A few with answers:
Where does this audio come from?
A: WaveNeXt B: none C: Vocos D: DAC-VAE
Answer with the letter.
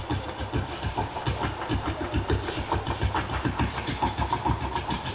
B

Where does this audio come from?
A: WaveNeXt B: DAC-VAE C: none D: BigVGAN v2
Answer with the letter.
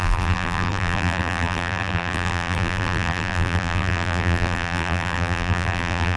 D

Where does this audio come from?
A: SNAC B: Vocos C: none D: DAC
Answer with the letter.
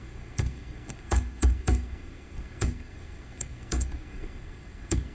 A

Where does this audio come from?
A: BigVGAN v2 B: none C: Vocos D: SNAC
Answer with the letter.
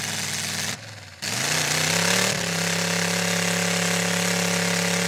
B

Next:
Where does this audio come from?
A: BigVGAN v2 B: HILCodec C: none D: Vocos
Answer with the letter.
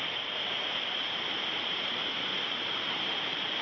A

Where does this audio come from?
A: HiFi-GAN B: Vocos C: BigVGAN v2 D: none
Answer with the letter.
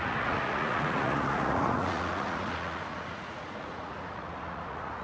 B